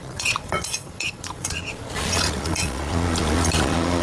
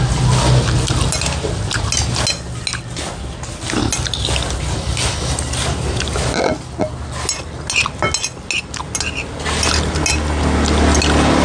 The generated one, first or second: first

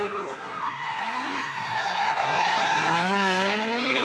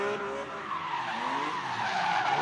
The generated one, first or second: first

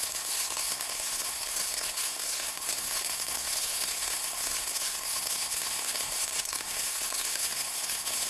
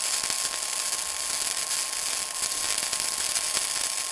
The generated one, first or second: first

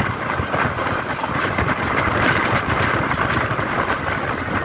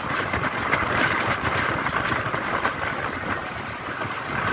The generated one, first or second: second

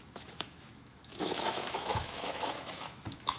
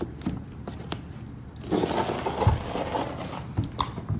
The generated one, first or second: first